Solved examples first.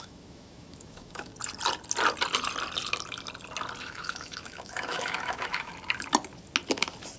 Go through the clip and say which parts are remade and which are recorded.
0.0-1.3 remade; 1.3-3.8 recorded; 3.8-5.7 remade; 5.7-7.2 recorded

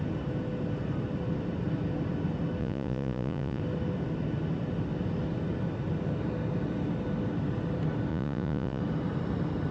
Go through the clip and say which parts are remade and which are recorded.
0.0-2.6 recorded; 2.6-3.6 remade; 3.6-8.1 recorded; 8.1-8.8 remade; 8.8-9.7 recorded

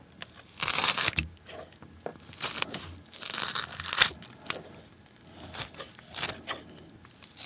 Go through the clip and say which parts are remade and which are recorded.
0.0-7.5 recorded

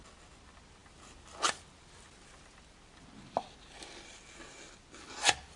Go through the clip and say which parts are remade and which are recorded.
0.0-5.6 remade

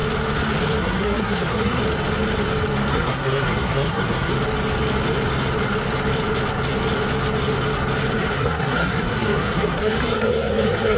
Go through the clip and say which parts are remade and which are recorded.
0.0-0.8 recorded; 0.8-1.8 remade; 1.8-2.9 recorded; 2.9-4.3 remade; 4.3-8.3 recorded; 8.3-11.0 remade

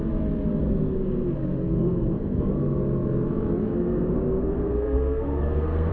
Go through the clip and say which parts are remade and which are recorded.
0.0-0.6 recorded; 0.6-2.6 remade; 2.6-3.6 recorded; 3.6-5.9 remade

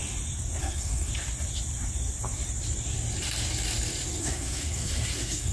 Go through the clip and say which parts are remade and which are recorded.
0.0-0.6 recorded; 0.6-1.1 remade; 1.1-4.2 recorded; 4.2-5.5 remade